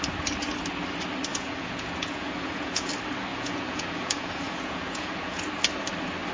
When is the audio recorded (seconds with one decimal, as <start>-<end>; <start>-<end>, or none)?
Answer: 0.0-1.3; 2.9-3.3; 5.4-6.3